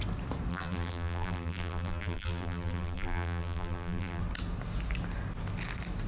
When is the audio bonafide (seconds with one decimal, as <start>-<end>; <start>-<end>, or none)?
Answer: 0.0-0.5; 4.2-6.1